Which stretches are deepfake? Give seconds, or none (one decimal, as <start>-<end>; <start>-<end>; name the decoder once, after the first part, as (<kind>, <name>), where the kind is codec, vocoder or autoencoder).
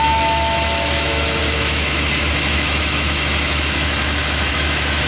0.0-5.1 (autoencoder, DAC-VAE)